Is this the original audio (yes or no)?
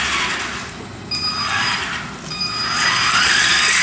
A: yes